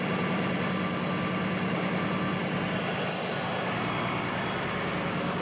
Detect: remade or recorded recorded